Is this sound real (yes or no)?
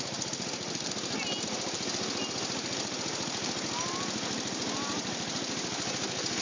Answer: yes